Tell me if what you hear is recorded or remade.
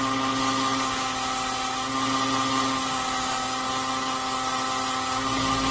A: recorded